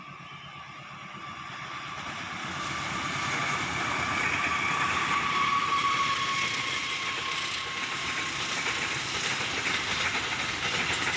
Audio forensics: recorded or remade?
recorded